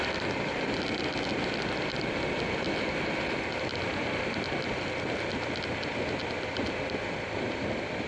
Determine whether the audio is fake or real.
real